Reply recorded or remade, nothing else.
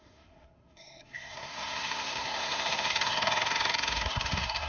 remade